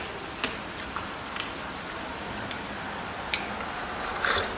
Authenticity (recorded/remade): recorded